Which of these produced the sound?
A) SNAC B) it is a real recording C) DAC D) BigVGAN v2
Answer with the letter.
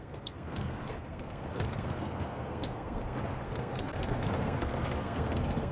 A